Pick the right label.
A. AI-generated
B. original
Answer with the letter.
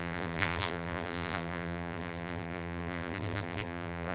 A